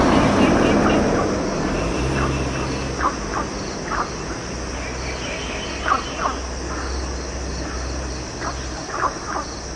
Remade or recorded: recorded